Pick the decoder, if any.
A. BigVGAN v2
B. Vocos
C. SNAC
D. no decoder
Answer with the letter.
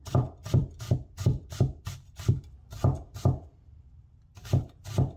A